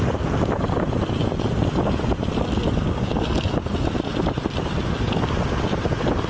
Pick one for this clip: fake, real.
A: real